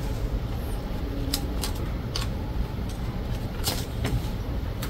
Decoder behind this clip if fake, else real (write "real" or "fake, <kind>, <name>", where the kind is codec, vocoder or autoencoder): fake, vocoder, BigVGAN v2